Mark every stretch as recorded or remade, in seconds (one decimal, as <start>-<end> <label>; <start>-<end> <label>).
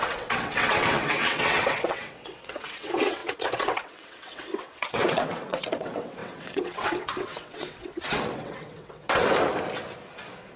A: 0.0-9.2 remade; 9.2-10.6 recorded